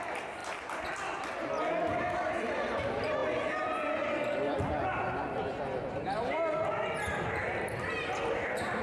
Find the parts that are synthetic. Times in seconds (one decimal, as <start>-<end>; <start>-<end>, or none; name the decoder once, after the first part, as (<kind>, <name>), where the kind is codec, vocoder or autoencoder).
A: 0.0-0.4 (vocoder, BigVGAN v2); 1.9-3.2; 7.2-8.8